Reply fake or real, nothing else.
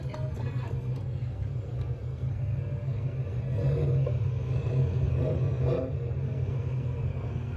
fake